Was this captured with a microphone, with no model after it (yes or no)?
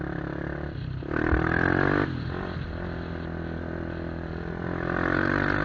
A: yes